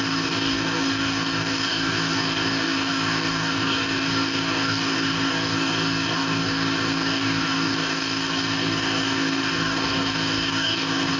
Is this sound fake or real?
fake